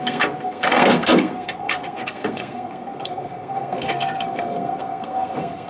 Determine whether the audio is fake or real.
fake